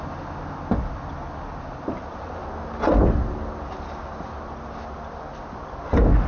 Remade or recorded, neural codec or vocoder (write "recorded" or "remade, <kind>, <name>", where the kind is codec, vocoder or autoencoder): recorded